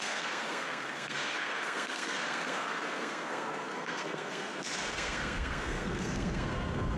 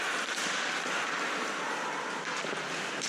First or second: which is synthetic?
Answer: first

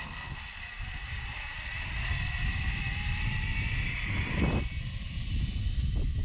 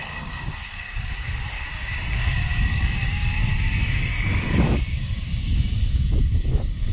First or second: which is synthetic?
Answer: second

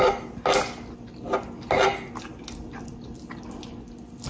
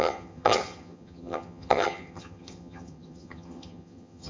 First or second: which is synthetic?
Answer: second